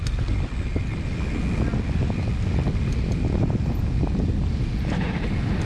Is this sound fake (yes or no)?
no